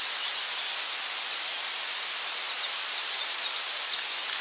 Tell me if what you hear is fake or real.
real